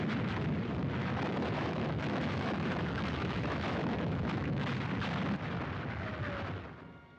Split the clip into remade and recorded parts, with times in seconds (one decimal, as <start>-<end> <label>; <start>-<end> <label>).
0.0-1.0 recorded; 1.0-4.7 remade; 4.7-7.2 recorded